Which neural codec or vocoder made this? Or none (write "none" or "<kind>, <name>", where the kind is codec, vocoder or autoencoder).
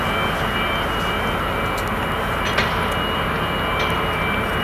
none